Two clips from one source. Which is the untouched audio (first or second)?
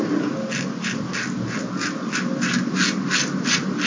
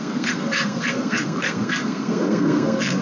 first